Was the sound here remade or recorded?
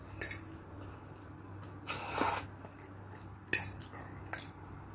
recorded